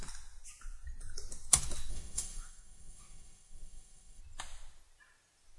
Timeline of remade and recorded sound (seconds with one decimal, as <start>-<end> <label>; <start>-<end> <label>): 0.0-1.9 recorded; 1.9-4.2 remade; 4.2-5.6 recorded